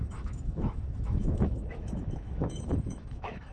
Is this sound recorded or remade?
remade